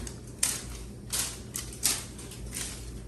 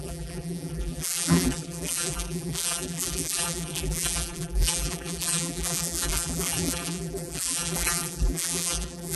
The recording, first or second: first